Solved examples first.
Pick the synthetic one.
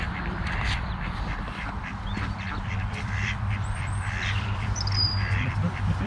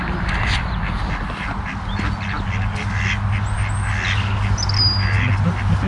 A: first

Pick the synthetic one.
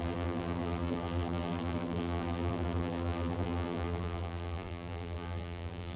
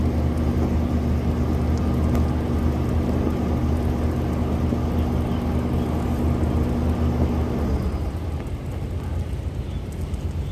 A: first